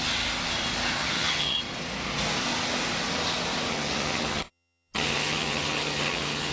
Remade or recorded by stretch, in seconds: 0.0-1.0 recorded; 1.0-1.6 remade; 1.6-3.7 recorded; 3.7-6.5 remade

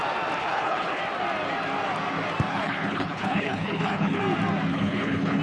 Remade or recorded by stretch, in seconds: 0.0-0.4 recorded; 0.4-1.0 remade; 1.0-2.5 recorded; 2.5-4.2 remade; 4.2-4.7 recorded; 4.7-5.4 remade

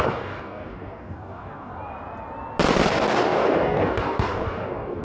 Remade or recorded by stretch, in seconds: 0.0-1.7 remade; 1.7-2.9 recorded; 2.9-5.0 remade

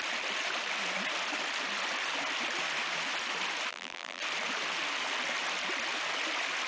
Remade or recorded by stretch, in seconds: 0.0-3.7 recorded; 3.7-4.2 remade; 4.2-6.7 recorded

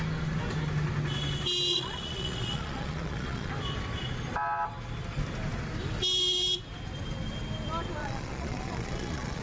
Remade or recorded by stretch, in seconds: 0.0-1.7 recorded; 1.7-3.5 remade; 3.5-8.0 recorded; 8.0-9.4 remade

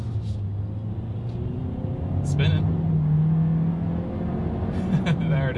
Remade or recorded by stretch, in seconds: 0.0-5.6 recorded